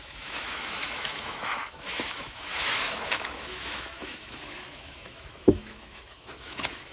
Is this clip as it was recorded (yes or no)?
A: no